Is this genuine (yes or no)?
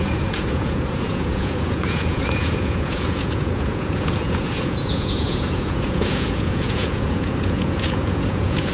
no